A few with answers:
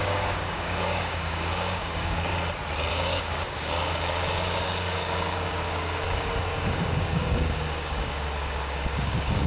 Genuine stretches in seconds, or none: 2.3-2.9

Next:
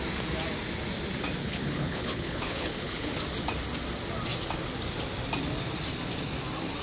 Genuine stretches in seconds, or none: 0.0-1.4; 3.2-6.8